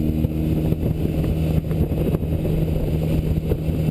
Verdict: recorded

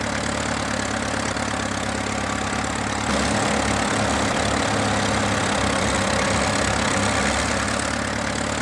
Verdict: recorded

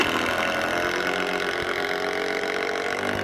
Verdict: recorded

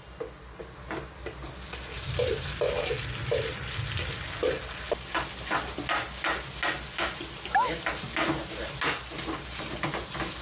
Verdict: recorded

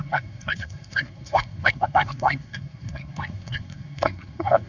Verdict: remade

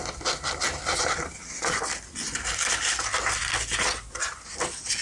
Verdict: recorded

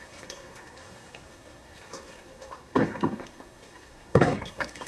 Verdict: remade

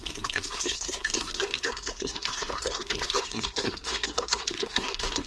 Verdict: remade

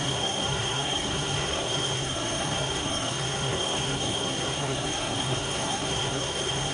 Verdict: remade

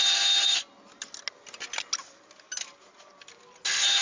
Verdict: recorded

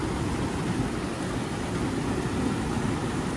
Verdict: recorded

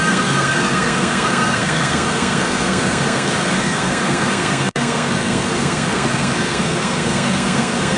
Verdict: remade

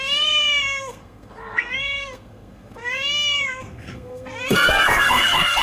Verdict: remade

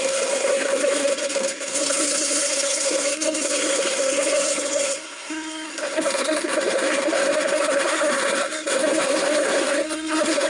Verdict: remade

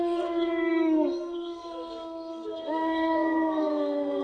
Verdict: remade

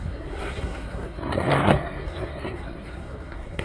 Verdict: remade